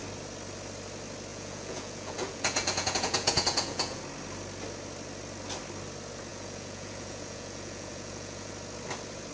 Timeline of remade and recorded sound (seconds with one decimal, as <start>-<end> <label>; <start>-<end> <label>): 0.0-1.3 recorded; 1.3-4.0 remade; 4.0-6.3 recorded; 6.3-8.5 remade; 8.5-9.3 recorded